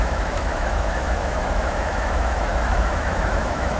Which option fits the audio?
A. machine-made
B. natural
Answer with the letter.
A